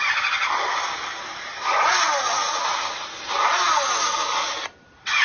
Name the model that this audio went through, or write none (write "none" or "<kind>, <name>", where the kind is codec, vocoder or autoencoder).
none